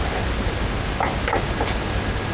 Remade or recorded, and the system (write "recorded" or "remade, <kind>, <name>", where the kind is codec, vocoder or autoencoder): recorded